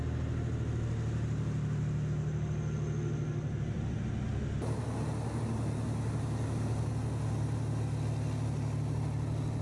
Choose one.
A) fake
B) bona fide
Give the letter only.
B